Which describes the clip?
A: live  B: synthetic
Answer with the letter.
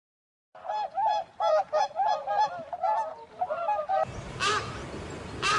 A